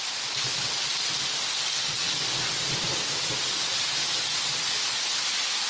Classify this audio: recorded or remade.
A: recorded